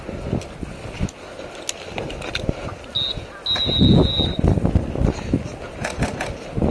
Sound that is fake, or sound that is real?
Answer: real